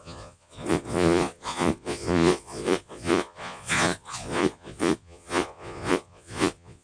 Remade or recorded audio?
remade